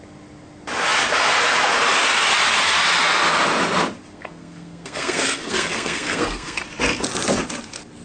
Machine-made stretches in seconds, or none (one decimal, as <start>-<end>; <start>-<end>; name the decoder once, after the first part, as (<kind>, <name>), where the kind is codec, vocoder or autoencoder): 4.1-6.6 (codec, SNAC)